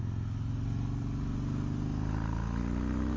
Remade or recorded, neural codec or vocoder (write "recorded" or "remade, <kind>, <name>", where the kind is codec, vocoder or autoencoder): recorded